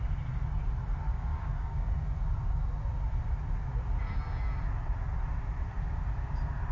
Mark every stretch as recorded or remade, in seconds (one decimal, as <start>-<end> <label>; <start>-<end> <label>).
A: 0.0-1.1 recorded; 1.1-1.9 remade; 1.9-6.7 recorded